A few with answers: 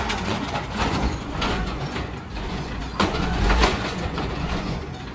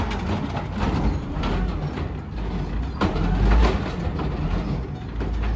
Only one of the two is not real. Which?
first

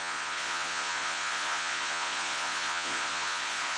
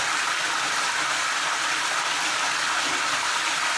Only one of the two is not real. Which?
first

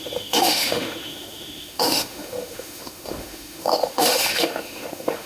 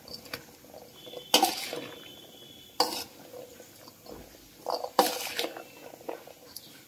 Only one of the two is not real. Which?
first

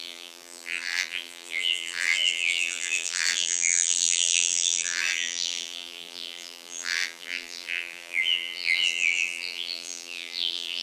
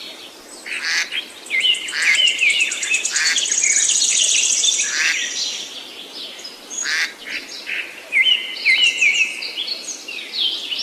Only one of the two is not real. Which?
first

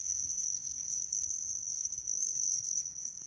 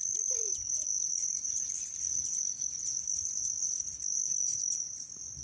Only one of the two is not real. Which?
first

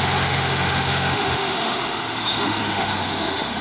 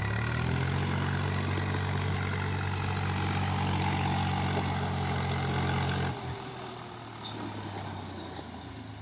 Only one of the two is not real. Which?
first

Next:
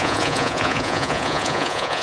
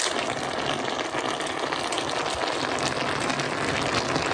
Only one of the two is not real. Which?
first